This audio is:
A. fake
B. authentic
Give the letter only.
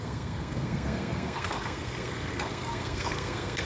A